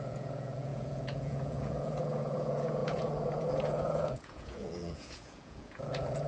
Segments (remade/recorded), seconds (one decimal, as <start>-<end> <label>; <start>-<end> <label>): 0.0-6.3 remade